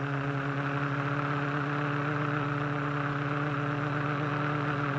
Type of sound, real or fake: real